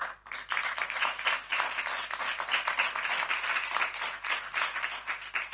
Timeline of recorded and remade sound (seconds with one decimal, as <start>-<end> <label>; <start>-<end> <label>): 0.0-5.5 recorded